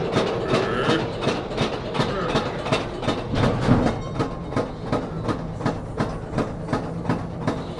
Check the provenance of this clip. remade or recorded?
recorded